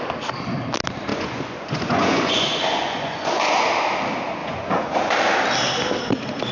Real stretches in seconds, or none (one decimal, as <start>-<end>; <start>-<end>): 0.0-1.1; 3.7-4.4; 5.0-6.5